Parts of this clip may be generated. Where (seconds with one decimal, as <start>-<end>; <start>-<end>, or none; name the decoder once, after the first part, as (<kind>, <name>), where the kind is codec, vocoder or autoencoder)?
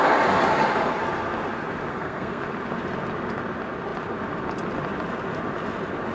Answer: 1.9-2.4 (codec, SNAC)